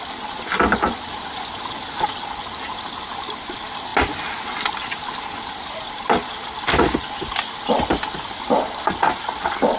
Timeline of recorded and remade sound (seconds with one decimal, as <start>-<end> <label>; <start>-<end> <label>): 0.0-9.8 recorded

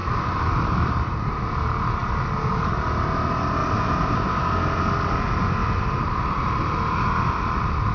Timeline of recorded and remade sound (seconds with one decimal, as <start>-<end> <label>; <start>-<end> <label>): 0.0-1.5 remade; 1.5-3.6 recorded; 3.6-4.4 remade; 4.4-5.6 recorded; 5.6-6.2 remade; 6.2-7.9 recorded

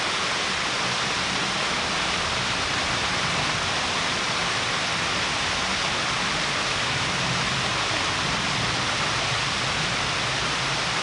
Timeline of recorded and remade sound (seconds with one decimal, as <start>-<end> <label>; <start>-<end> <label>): 0.0-4.4 remade; 4.4-6.8 recorded; 6.8-11.0 remade

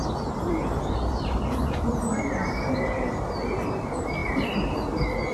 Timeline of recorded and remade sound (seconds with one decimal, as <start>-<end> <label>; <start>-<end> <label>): 0.0-3.2 remade; 3.2-5.3 recorded

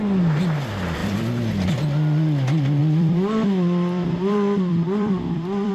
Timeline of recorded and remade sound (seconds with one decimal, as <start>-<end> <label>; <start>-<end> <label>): 0.0-2.8 recorded; 2.8-5.7 remade

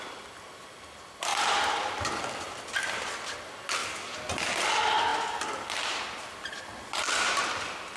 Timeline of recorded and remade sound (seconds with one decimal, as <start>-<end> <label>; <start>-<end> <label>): 0.0-1.3 recorded; 1.3-2.6 remade; 2.6-3.8 recorded; 3.8-4.3 remade; 4.3-8.0 recorded

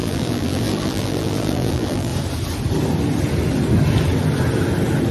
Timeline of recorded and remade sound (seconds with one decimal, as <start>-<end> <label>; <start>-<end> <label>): 0.0-2.1 remade; 2.1-5.1 recorded

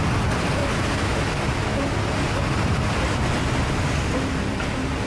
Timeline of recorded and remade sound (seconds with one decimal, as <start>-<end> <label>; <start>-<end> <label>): 0.0-0.6 remade; 0.6-3.7 recorded; 3.7-5.1 remade